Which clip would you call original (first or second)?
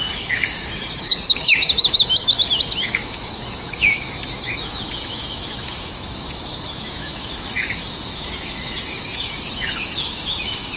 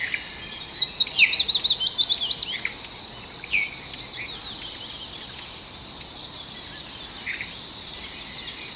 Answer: second